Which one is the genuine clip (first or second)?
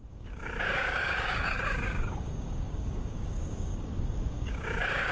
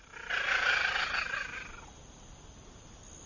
second